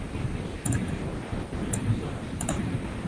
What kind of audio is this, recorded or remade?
remade